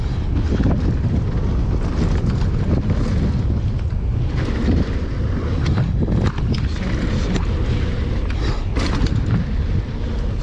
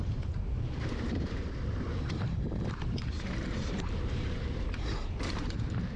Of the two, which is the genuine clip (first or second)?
first